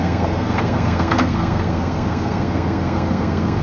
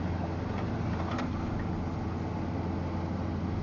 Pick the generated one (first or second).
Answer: first